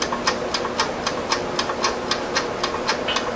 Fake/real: real